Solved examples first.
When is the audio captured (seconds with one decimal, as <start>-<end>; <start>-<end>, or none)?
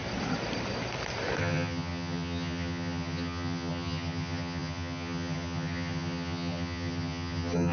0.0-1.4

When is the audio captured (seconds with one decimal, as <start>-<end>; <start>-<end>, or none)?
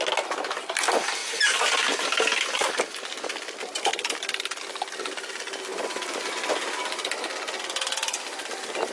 0.0-8.9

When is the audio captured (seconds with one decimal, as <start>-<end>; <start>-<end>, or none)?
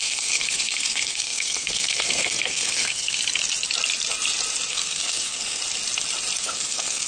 3.2-4.7; 5.6-6.4